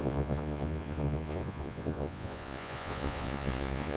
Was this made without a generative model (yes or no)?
no